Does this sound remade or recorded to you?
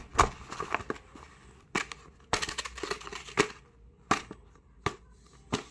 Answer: recorded